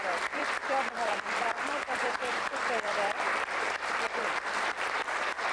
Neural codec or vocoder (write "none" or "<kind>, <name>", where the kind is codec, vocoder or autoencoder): vocoder, BigVGAN v2